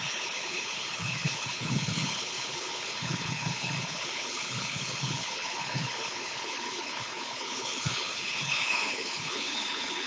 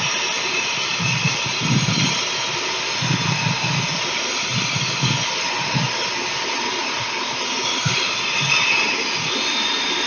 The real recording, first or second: second